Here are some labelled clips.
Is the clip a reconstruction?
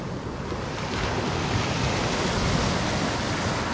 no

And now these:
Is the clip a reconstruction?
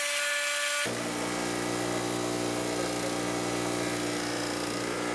no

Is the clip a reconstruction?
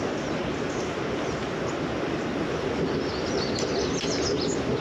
no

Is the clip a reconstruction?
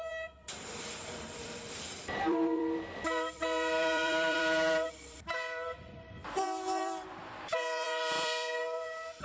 yes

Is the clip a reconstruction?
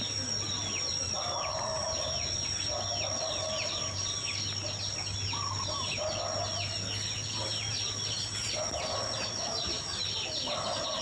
no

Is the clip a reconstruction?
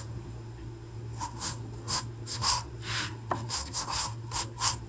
yes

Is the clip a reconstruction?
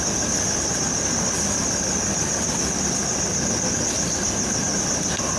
no